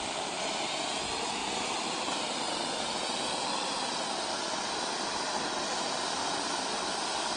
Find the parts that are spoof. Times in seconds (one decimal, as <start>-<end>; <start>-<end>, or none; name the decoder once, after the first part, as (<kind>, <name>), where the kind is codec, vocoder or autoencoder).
none